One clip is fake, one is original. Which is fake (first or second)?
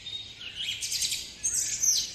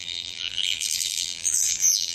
second